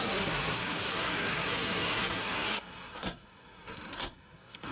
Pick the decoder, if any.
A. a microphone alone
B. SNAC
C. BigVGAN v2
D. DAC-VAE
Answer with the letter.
B